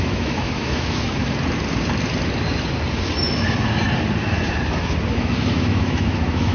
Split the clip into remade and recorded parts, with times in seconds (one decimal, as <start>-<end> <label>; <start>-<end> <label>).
0.0-1.2 remade; 1.2-5.1 recorded; 5.1-6.5 remade